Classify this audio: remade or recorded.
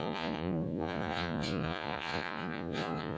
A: remade